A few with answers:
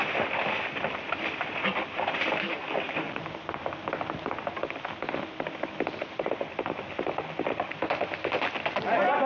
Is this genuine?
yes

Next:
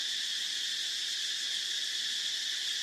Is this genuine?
yes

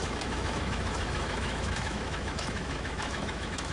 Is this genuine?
no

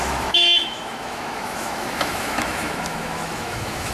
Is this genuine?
no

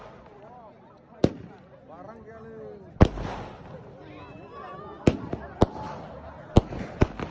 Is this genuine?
yes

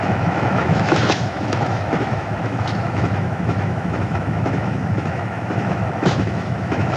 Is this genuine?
no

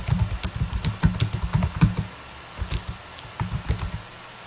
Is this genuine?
yes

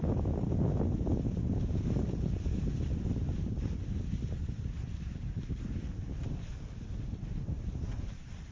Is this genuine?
yes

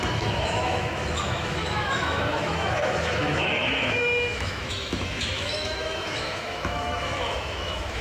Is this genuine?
no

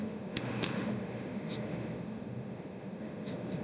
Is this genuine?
no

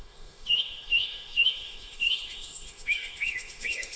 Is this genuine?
no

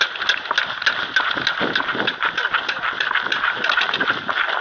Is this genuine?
yes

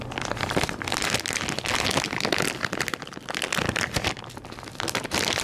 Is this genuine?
yes